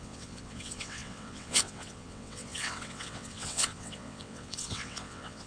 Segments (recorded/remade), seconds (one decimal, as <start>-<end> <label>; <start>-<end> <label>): 0.0-5.5 remade